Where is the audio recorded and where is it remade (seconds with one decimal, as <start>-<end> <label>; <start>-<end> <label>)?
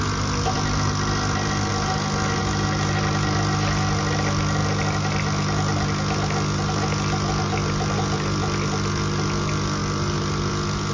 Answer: 0.0-10.9 recorded